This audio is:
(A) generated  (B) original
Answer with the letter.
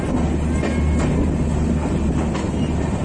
B